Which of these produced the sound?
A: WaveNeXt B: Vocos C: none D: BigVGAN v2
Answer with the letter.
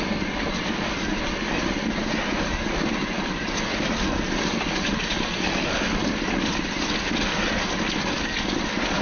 C